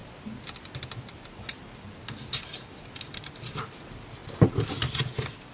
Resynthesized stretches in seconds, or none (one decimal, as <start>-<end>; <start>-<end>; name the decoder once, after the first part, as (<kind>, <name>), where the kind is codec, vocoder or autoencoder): none